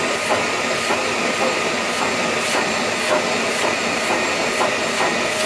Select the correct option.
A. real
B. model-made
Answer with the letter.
A